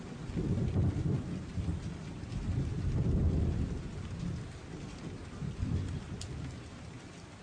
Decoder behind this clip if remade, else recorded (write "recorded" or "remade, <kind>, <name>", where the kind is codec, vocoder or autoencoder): remade, vocoder, BigVGAN v2